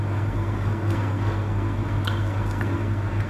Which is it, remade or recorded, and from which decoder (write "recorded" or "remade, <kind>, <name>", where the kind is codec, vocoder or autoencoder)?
remade, codec, SNAC